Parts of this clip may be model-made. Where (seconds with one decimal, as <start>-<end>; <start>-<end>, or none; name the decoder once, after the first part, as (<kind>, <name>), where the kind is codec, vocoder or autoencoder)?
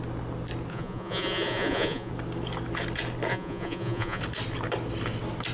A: 0.7-2.1 (vocoder, Vocos); 3.3-4.2